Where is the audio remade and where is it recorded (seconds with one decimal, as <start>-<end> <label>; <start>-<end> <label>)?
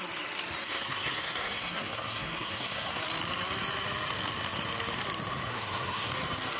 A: 0.0-0.6 recorded; 0.6-3.0 remade; 3.0-5.5 recorded; 5.5-6.1 remade; 6.1-6.6 recorded